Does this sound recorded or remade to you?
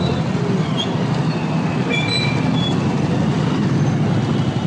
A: recorded